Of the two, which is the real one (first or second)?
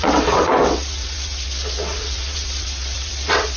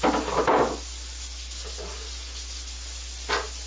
second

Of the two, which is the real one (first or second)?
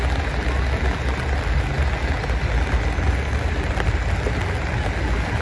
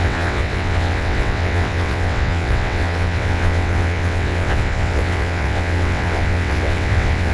first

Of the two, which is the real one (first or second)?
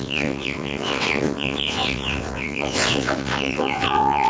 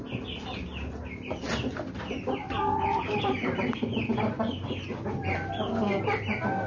second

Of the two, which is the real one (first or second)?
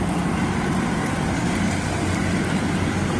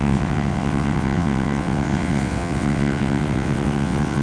first